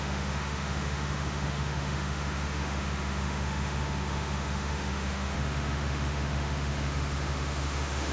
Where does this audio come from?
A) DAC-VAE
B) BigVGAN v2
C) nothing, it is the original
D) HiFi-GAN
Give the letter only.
A